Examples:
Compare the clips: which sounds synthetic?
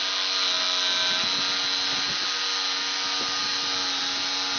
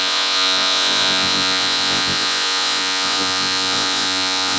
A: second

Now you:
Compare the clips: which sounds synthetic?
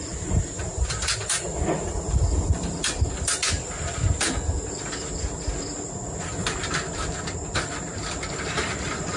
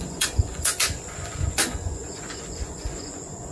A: second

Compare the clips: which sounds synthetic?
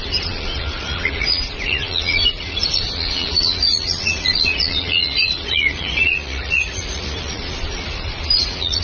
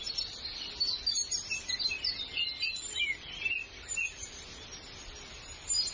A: first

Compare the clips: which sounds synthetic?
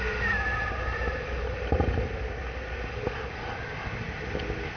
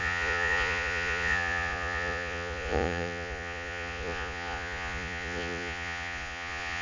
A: second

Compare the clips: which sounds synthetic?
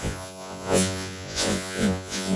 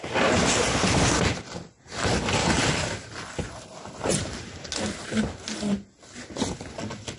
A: first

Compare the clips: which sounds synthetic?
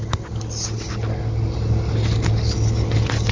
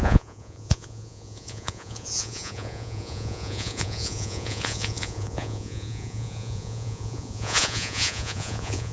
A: second